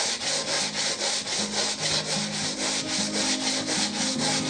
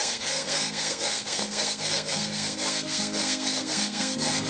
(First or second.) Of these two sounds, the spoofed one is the second